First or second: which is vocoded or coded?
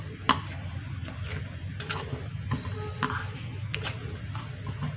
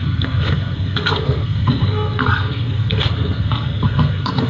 second